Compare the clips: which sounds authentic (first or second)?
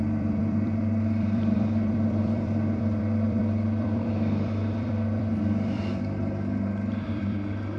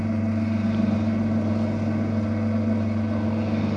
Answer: second